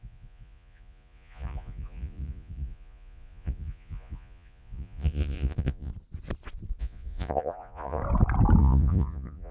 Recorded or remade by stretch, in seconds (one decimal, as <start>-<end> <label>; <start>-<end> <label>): 0.0-5.9 remade; 5.9-6.8 recorded; 6.8-8.0 remade; 8.0-8.6 recorded; 8.6-9.5 remade